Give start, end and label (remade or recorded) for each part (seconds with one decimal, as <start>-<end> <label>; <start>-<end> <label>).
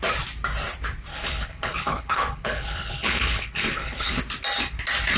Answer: 0.0-1.1 recorded; 1.1-4.2 remade; 4.2-5.2 recorded